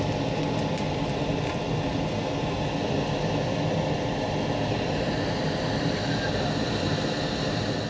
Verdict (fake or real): real